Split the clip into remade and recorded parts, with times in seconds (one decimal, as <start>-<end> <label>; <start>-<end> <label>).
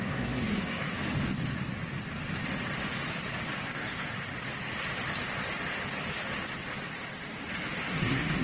0.0-0.9 remade; 0.9-3.6 recorded; 3.6-4.3 remade; 4.3-7.8 recorded; 7.8-8.4 remade